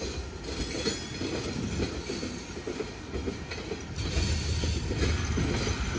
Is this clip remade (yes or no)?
no